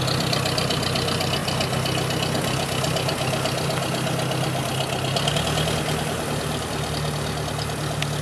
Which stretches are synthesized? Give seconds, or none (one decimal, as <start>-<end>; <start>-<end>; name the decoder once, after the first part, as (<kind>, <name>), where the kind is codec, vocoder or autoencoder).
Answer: none